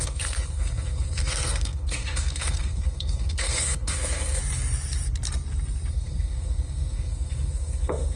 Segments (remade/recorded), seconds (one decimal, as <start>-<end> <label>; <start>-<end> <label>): 0.0-4.4 remade; 4.4-5.9 recorded; 5.9-8.2 remade